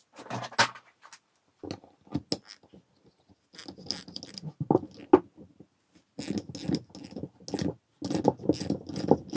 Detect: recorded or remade recorded